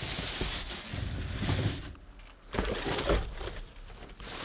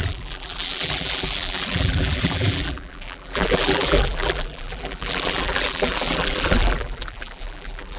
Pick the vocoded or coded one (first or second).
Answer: second